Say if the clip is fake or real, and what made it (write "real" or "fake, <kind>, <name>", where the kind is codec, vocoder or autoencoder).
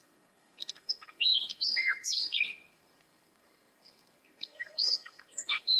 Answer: fake, codec, SNAC